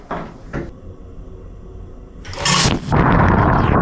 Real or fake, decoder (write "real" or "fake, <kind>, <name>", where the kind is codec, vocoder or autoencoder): real